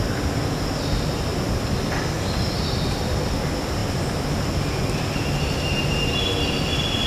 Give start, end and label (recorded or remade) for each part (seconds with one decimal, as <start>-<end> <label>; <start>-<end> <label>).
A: 0.0-7.1 recorded